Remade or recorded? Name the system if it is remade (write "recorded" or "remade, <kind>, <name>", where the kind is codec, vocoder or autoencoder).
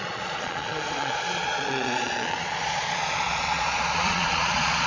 remade, vocoder, Vocos